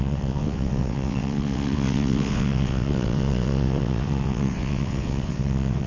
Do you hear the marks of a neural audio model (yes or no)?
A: yes